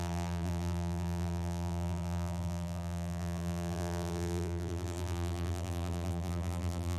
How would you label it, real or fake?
fake